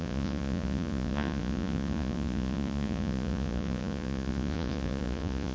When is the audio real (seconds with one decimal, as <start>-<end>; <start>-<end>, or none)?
none